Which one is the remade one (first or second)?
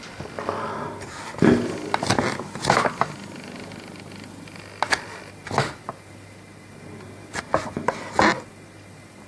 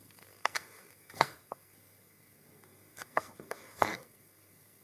second